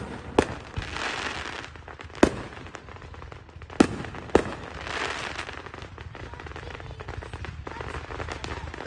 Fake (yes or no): no